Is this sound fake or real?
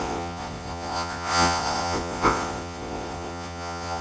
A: fake